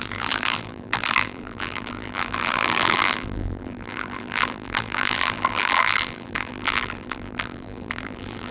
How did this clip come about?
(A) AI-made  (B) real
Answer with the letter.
A